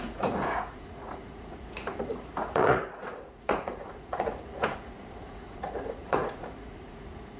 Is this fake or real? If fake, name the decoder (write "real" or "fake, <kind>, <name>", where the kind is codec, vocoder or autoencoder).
fake, vocoder, Vocos